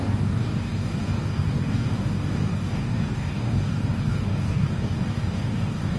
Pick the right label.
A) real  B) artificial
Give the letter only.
B